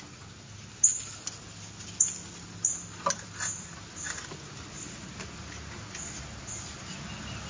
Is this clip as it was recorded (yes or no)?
yes